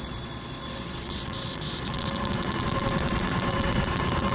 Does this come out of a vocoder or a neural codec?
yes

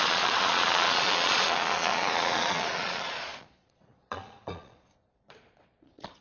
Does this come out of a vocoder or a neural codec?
yes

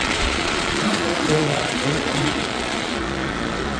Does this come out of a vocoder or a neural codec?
yes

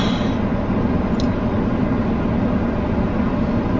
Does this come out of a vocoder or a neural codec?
no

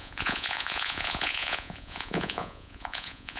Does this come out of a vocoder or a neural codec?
yes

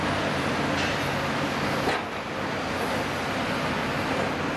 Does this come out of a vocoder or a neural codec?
no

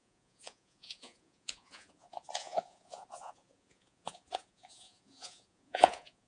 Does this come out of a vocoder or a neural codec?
yes